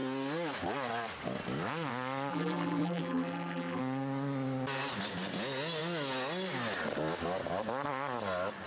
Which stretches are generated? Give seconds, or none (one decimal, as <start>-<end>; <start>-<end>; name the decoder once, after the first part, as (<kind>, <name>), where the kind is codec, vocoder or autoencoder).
2.3-3.8 (vocoder, BigVGAN v2)